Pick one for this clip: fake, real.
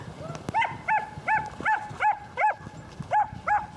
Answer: real